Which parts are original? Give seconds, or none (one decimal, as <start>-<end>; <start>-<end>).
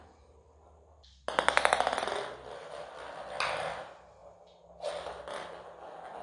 0.0-6.2